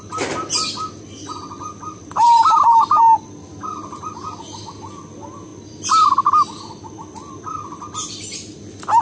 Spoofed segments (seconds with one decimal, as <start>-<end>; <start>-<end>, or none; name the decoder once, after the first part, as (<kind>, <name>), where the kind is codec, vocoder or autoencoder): none